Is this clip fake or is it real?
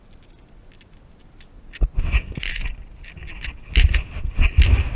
real